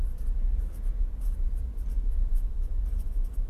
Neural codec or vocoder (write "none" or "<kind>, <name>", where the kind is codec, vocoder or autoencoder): vocoder, BigVGAN v2